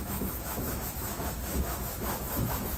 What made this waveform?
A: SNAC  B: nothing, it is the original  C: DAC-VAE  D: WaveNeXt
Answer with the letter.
C